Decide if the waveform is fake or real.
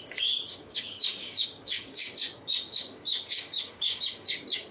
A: fake